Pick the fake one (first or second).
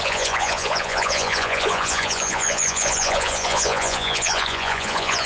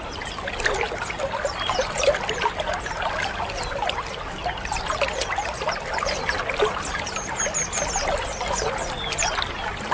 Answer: first